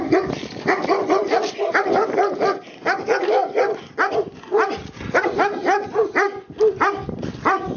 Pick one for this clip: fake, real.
real